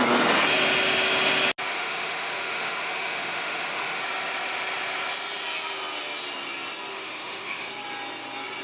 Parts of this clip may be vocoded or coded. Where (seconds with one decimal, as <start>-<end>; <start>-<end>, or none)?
1.7-4.0; 6.9-7.7